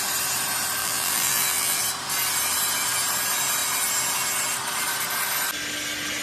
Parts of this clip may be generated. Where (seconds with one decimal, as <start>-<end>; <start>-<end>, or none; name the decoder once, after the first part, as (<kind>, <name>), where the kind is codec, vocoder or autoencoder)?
0.8-1.8 (vocoder, BigVGAN v2)